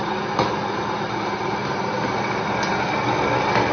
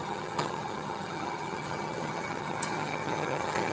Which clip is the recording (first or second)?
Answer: first